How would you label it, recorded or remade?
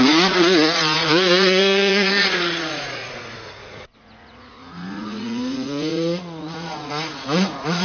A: remade